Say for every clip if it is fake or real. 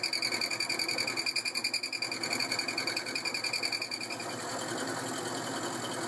real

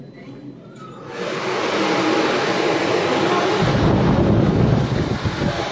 real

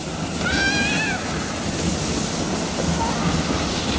real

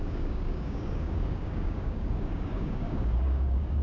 fake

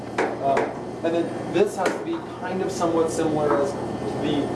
real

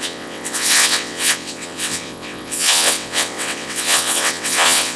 fake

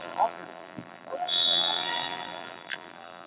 fake